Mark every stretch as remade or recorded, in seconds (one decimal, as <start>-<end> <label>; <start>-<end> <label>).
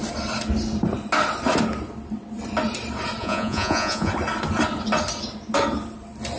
0.0-3.2 recorded; 3.2-4.1 remade; 4.1-6.4 recorded